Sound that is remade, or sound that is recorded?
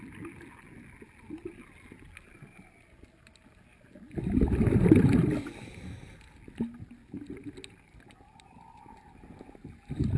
recorded